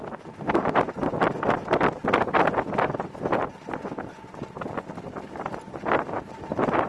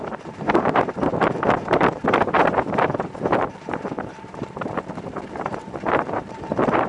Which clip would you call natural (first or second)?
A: first